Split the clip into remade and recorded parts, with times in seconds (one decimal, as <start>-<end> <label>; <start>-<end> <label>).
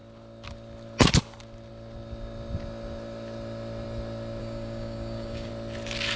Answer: 0.0-4.4 recorded; 4.4-5.5 remade; 5.5-6.2 recorded